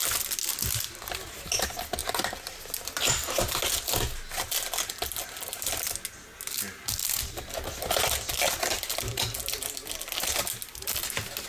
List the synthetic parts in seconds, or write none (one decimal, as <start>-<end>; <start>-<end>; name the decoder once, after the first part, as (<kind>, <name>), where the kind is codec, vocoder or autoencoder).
2.0-3.6 (vocoder, BigVGAN v2)